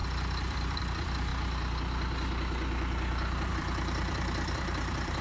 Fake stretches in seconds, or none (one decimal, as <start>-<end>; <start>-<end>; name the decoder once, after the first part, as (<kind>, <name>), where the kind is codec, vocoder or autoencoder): 0.0-1.3 (vocoder, BigVGAN v2); 3.5-5.2